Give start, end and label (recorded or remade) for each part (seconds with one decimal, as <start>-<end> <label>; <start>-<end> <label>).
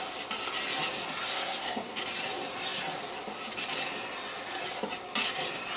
0.0-1.3 recorded; 1.3-2.0 remade; 2.0-5.8 recorded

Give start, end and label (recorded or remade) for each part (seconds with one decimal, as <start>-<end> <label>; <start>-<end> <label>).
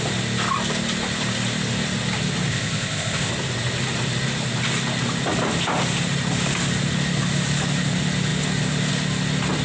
0.0-2.5 recorded; 2.5-3.3 remade; 3.3-9.6 recorded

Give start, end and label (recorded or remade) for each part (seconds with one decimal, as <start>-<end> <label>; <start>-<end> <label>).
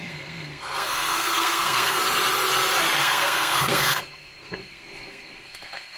0.0-2.0 remade; 2.0-3.0 recorded; 3.0-6.0 remade